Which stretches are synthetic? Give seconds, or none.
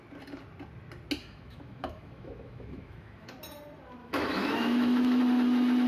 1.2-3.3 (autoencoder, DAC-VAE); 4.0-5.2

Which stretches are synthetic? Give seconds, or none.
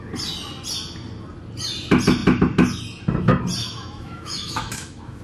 3.6-5.2 (autoencoder, DAC-VAE)